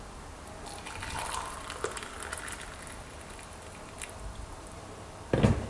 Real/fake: real